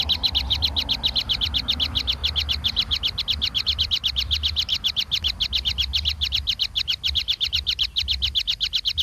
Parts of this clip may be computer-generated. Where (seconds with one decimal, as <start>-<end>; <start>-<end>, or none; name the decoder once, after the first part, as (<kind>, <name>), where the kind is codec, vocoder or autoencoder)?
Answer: none